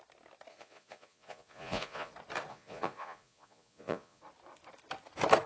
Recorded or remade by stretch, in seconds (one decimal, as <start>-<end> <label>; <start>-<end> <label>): 0.0-0.5 recorded; 0.5-2.1 remade; 2.1-2.5 recorded; 2.5-4.2 remade; 4.2-5.5 recorded